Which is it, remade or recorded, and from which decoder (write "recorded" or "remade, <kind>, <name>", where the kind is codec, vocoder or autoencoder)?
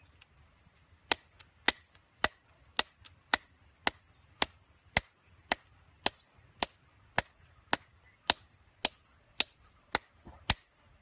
recorded